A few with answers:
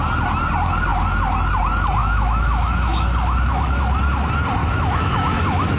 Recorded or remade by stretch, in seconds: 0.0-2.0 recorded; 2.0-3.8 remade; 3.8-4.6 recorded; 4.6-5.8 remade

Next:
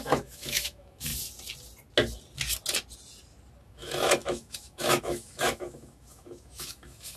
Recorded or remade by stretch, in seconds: 0.0-1.1 remade; 1.1-3.6 recorded; 3.6-7.2 remade

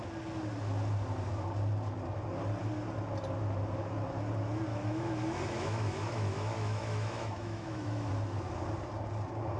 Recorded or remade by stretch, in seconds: 0.0-4.7 recorded; 4.7-8.1 remade; 8.1-9.6 recorded